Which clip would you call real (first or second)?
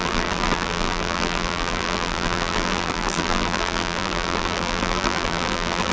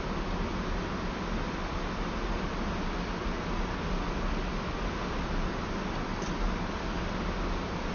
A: second